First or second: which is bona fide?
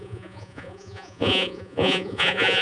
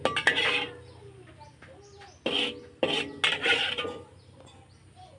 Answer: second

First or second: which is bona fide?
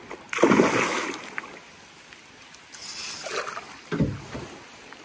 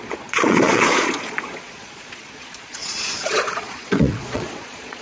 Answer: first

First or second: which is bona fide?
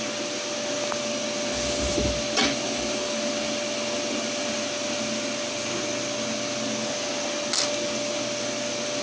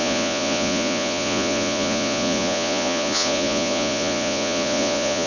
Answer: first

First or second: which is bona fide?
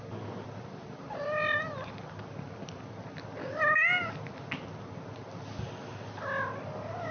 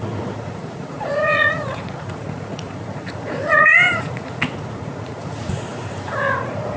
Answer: first